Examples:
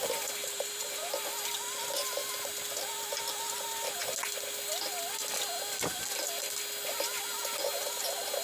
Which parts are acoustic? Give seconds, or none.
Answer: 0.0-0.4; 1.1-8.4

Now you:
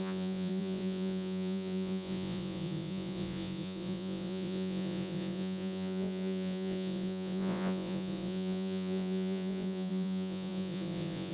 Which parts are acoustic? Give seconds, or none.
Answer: none

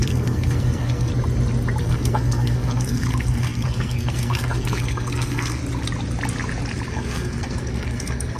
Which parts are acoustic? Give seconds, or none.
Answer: 1.1-1.8; 5.6-6.9

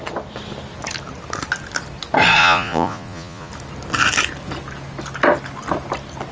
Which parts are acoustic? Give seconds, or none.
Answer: 0.0-2.4; 3.5-6.3